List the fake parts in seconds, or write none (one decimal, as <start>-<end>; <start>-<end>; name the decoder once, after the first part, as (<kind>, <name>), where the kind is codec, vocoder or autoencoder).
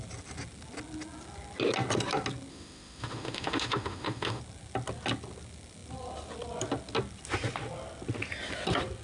2.5-4.4 (autoencoder, DAC-VAE)